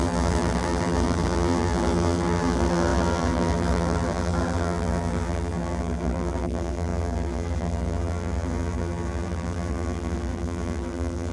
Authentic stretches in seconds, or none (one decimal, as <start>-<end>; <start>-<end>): none